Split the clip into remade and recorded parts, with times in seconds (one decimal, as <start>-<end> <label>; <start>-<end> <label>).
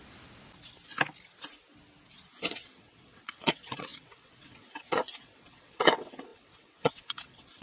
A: 0.0-2.5 recorded; 2.5-7.6 remade